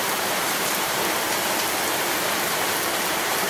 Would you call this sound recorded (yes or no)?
no